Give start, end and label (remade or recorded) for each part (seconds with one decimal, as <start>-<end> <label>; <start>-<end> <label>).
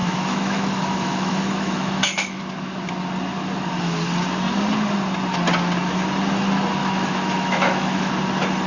0.0-2.4 remade; 2.4-6.8 recorded; 6.8-8.1 remade; 8.1-8.7 recorded